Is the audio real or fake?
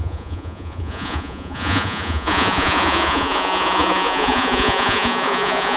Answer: fake